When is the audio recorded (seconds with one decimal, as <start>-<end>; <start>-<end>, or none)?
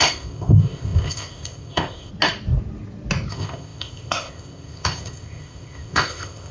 2.1-3.3